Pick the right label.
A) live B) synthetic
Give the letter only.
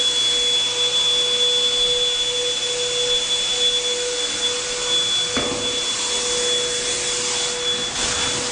A